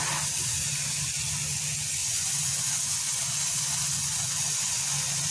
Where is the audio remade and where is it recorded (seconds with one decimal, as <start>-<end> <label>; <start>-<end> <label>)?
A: 0.0-2.0 recorded; 2.0-5.3 remade